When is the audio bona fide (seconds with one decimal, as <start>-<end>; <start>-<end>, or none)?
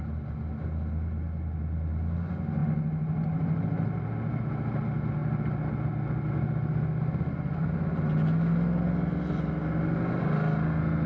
0.0-11.1